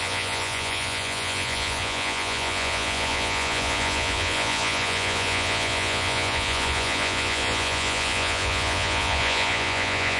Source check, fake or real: fake